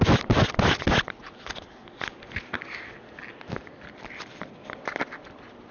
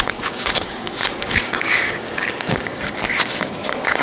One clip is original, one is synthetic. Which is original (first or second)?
first